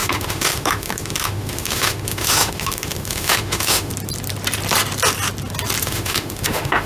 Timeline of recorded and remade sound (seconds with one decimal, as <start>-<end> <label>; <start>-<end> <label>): 0.0-3.9 remade; 3.9-5.8 recorded; 5.8-6.9 remade